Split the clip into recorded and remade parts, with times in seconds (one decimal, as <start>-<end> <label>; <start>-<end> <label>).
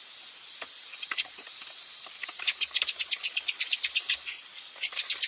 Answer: 0.0-0.8 recorded; 0.8-3.0 remade; 3.0-5.3 recorded